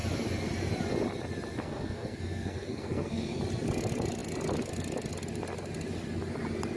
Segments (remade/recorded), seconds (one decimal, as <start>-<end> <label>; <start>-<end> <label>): 0.0-1.6 recorded; 1.6-3.4 remade; 3.4-6.8 recorded